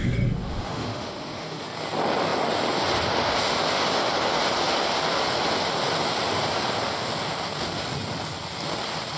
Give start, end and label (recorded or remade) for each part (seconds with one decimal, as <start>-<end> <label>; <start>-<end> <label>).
0.0-1.6 remade; 1.6-9.2 recorded